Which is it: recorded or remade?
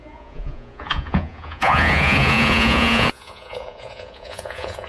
remade